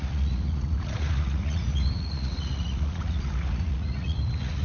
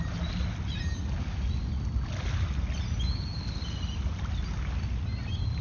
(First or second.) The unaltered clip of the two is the second